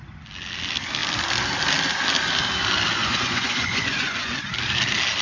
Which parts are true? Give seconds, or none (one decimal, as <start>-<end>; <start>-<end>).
0.0-3.0; 4.3-5.2